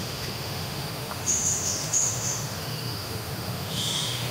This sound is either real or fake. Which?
fake